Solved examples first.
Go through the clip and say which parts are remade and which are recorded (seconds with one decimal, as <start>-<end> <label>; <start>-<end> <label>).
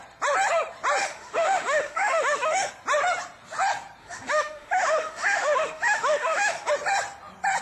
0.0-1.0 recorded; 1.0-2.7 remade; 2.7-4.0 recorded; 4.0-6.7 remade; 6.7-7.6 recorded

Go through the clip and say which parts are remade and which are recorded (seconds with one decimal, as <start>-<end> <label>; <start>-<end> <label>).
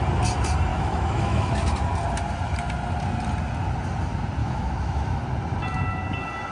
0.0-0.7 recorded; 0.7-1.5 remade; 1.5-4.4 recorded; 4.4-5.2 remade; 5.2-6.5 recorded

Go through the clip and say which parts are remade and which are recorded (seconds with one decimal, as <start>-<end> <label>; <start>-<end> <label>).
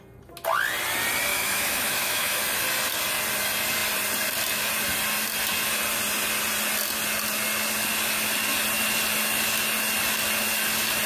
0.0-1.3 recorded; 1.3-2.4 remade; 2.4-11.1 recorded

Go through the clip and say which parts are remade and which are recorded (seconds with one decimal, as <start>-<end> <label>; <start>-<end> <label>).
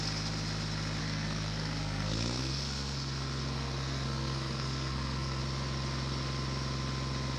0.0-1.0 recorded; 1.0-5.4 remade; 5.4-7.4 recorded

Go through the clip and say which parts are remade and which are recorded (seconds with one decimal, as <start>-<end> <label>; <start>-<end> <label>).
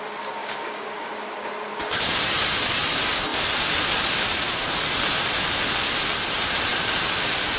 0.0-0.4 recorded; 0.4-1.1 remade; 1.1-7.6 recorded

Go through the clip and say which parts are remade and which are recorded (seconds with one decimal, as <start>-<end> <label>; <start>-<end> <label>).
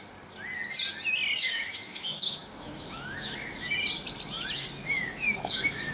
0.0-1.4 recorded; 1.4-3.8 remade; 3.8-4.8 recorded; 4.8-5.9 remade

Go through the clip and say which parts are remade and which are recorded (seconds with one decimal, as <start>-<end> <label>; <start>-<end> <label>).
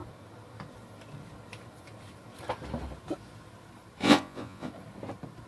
0.0-4.0 recorded; 4.0-4.7 remade; 4.7-5.5 recorded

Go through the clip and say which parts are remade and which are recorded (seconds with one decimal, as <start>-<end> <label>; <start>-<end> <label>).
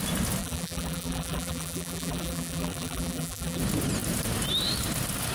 0.0-0.4 recorded; 0.4-3.6 remade; 3.6-5.3 recorded